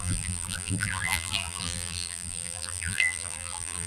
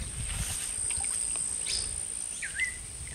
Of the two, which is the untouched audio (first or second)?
second